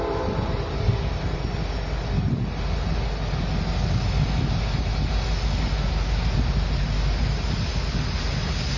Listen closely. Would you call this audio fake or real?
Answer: real